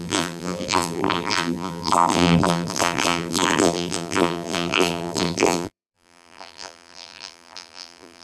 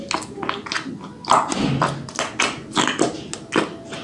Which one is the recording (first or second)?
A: second